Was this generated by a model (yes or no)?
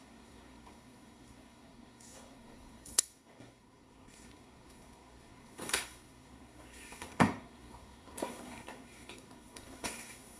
yes